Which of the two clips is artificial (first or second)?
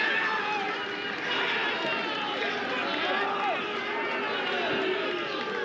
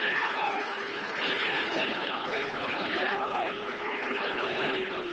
second